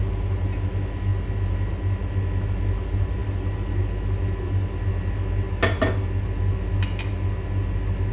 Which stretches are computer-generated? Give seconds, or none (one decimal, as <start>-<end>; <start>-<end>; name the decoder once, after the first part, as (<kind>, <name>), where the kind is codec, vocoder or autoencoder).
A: none